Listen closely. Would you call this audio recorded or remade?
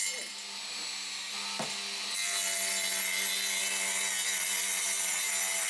recorded